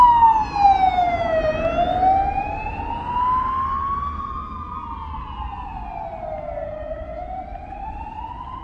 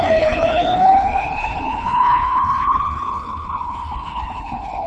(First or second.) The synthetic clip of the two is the second